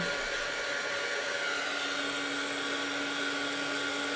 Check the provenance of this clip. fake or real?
real